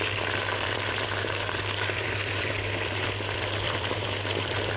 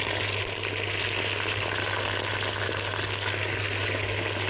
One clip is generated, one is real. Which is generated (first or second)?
first